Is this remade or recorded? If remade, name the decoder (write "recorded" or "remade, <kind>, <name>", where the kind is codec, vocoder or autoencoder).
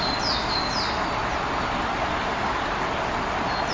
recorded